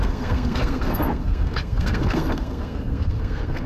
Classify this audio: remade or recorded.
remade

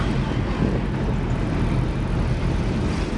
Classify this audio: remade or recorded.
recorded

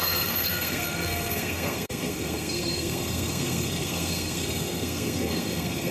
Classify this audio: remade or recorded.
remade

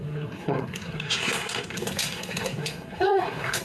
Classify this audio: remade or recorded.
remade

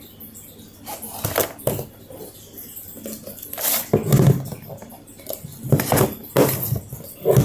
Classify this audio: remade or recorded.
recorded